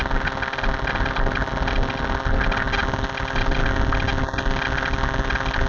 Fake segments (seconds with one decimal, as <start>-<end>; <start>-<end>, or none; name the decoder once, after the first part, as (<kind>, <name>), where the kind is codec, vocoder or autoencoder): none